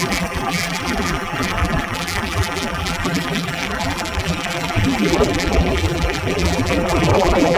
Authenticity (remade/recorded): remade